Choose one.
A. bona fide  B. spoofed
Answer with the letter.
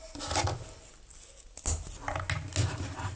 A